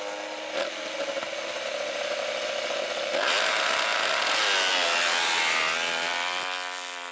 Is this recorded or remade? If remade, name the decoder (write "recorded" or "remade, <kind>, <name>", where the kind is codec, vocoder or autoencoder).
recorded